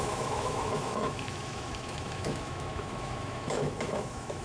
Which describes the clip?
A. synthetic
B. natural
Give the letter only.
A